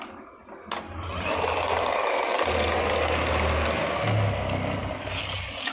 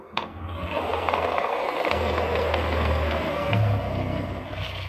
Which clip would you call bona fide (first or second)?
first